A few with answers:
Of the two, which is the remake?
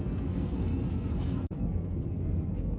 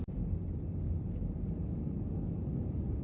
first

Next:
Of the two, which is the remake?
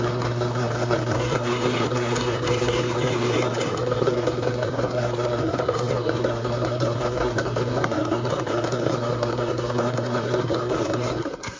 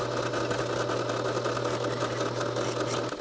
first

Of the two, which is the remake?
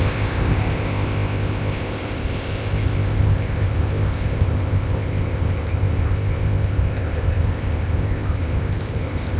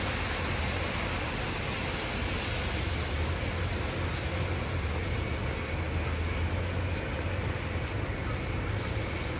first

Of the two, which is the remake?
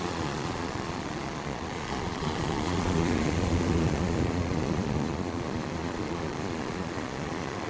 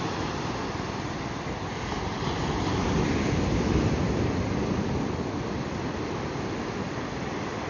first